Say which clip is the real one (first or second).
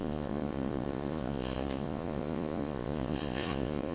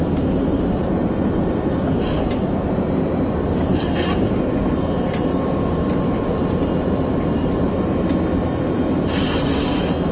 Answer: second